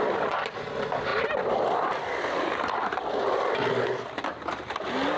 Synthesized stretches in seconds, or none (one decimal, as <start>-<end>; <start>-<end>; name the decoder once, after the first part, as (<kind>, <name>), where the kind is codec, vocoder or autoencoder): 0.0-1.1 (vocoder, BigVGAN v2); 3.7-5.2